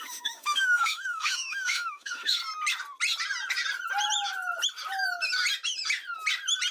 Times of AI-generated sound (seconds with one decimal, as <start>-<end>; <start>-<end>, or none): 0.0-2.4